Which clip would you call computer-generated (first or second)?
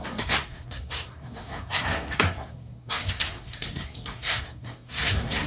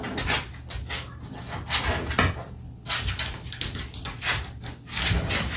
first